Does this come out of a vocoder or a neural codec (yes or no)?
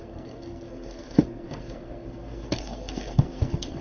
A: yes